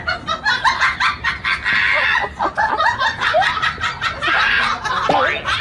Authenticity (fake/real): real